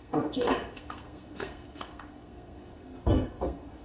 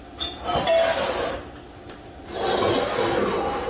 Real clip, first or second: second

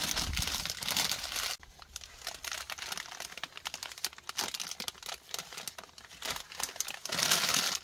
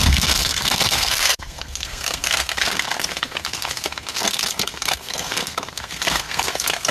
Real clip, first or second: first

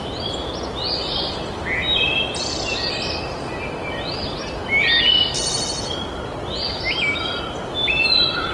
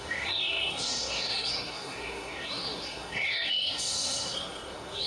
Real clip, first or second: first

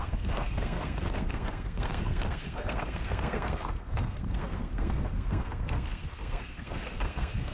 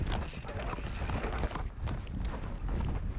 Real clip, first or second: second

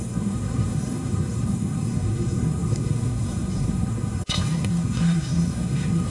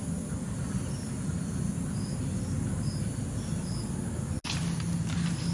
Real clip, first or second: second